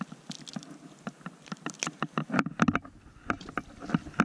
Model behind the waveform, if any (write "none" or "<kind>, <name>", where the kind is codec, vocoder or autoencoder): none